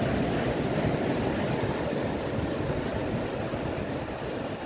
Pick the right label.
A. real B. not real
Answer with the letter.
A